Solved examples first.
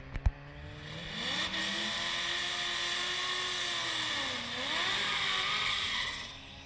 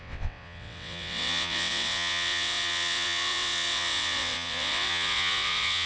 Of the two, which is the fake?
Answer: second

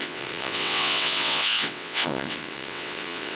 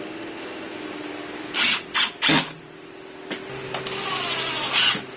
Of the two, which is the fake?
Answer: first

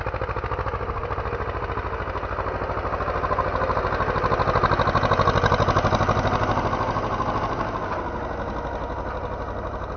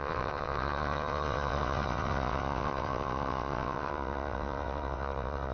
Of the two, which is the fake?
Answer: second